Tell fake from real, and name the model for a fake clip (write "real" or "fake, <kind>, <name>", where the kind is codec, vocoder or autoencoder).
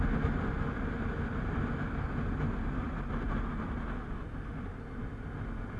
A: real